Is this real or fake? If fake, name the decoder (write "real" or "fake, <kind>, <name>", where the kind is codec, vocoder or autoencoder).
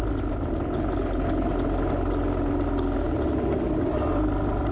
real